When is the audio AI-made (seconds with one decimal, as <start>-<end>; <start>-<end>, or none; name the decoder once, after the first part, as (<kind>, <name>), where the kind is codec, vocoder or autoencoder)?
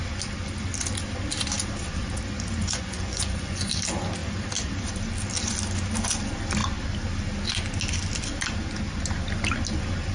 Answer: 2.6-3.7 (vocoder, Vocos)